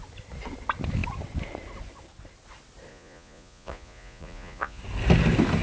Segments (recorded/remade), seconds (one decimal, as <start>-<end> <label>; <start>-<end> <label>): 0.0-2.9 recorded; 2.9-4.8 remade; 4.8-5.6 recorded